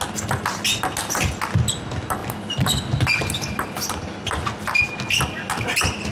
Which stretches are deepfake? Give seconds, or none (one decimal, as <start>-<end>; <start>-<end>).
none